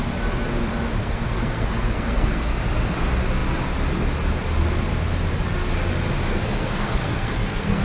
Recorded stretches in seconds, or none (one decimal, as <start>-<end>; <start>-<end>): 0.0-1.0; 2.6-6.3